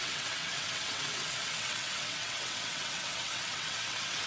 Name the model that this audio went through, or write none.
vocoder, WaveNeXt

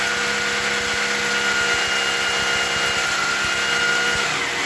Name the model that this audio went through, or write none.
none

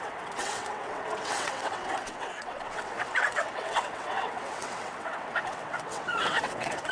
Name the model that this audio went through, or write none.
vocoder, WaveNeXt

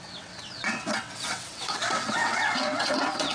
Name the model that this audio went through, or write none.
vocoder, WaveNeXt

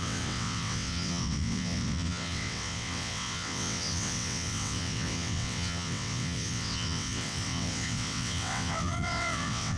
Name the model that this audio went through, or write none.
vocoder, WaveNeXt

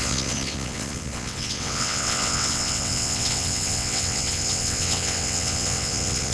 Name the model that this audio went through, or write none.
vocoder, WaveNeXt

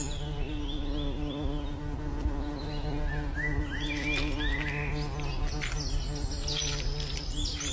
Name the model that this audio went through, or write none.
none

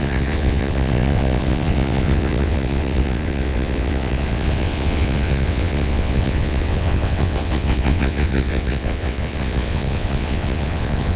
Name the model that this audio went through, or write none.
vocoder, WaveNeXt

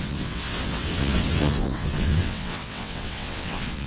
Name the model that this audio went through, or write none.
vocoder, WaveNeXt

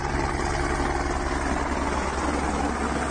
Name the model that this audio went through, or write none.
none